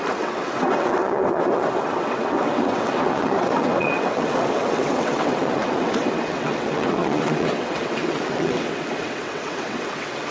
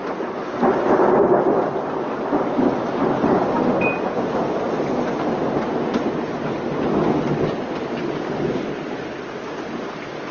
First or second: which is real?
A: second